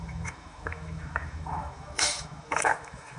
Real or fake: fake